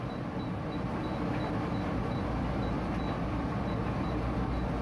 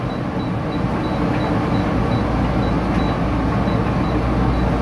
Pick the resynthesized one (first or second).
first